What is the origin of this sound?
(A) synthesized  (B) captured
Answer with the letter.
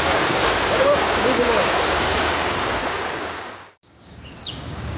A